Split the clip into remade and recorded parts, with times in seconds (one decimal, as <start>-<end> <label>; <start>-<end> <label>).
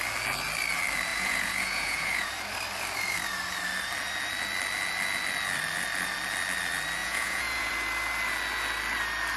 0.0-1.1 recorded; 1.1-2.3 remade; 2.3-7.0 recorded; 7.0-7.7 remade; 7.7-9.4 recorded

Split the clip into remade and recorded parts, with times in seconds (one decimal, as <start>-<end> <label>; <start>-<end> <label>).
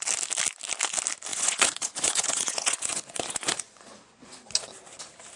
0.0-1.3 recorded; 1.3-4.5 remade; 4.5-5.4 recorded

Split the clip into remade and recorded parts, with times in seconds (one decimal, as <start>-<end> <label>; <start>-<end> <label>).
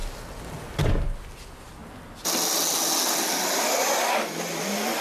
0.0-5.0 recorded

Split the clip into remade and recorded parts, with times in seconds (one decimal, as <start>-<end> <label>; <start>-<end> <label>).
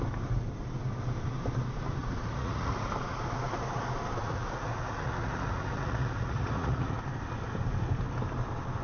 0.0-2.0 recorded; 2.0-2.9 remade; 2.9-4.2 recorded; 4.2-7.0 remade; 7.0-8.8 recorded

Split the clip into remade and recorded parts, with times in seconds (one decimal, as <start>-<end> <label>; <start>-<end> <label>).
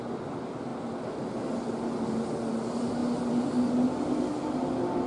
0.0-5.1 recorded